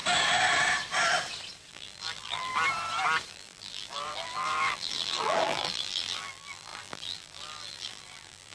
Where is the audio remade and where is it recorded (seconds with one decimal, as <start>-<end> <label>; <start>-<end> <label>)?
0.0-1.7 recorded; 1.7-2.5 remade; 2.5-3.3 recorded; 3.3-8.5 remade